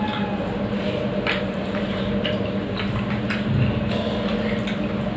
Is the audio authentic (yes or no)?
yes